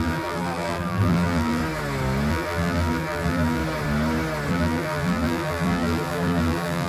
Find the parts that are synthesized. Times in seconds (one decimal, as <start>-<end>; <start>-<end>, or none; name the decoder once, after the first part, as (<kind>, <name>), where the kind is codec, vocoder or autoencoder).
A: 0.0-1.6 (vocoder, BigVGAN v2); 2.3-3.6; 4.5-6.9